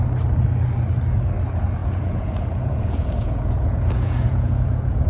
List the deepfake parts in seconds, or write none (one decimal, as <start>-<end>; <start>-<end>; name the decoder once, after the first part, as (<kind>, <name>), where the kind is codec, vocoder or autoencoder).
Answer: 1.8-5.1 (vocoder, Vocos)

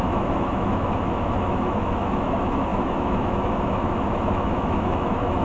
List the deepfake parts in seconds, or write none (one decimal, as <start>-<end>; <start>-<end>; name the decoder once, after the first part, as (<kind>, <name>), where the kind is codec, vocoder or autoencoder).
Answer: 0.0-5.4 (autoencoder, DAC-VAE)

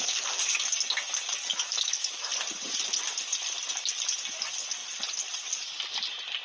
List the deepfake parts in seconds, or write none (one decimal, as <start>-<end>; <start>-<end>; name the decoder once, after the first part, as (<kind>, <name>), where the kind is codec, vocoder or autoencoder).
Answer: 1.5-2.3 (autoencoder, DAC-VAE)

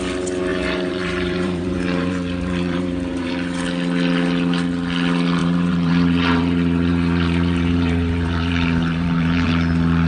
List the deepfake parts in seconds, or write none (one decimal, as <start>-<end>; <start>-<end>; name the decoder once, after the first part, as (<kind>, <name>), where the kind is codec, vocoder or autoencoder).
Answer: 0.5-3.3 (vocoder, BigVGAN v2); 5.4-9.5

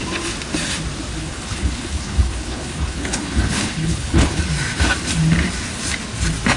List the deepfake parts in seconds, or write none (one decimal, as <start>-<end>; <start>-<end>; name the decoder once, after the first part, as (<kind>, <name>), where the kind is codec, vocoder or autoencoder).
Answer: 1.2-4.4 (codec, HILCodec)